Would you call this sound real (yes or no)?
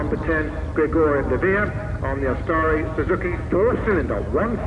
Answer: yes